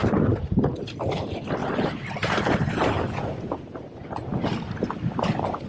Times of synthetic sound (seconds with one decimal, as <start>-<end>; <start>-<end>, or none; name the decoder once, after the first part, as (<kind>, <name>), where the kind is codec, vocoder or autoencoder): none

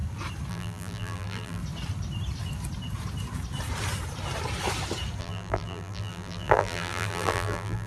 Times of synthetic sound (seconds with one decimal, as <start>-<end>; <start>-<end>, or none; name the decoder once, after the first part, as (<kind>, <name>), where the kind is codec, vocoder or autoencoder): 0.5-1.6 (vocoder, BigVGAN v2); 5.2-7.9

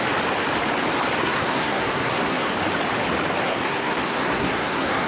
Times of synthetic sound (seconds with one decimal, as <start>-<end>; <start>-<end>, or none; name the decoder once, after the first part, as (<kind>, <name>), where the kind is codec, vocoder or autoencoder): 1.2-2.5 (codec, SNAC); 3.4-5.1

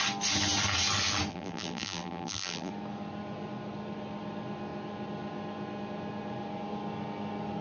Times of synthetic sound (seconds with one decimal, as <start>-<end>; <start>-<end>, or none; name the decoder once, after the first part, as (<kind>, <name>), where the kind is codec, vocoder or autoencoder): 1.3-2.7 (vocoder, BigVGAN v2)

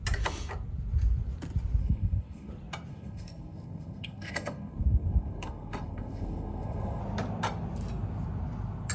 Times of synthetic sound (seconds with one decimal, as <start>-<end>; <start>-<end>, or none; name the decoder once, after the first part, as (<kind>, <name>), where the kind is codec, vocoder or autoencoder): 1.8-2.5 (codec, SNAC); 2.9-7.0

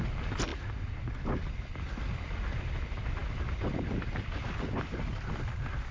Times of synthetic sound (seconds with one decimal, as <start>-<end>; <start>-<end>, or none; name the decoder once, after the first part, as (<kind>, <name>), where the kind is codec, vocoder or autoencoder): none

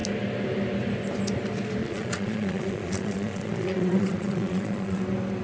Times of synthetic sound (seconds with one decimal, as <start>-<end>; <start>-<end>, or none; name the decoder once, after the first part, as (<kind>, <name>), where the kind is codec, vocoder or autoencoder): 1.8-5.0 (vocoder, Vocos)